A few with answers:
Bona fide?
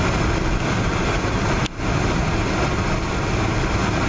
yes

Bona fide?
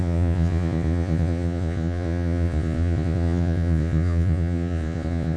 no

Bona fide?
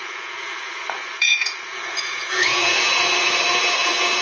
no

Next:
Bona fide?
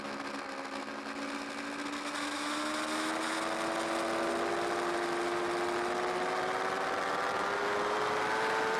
yes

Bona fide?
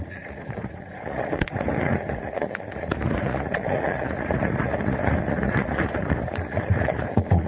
no